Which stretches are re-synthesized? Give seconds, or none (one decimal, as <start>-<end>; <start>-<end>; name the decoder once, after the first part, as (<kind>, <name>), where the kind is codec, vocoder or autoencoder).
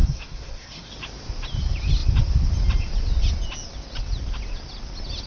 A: 0.0-0.9 (codec, SNAC)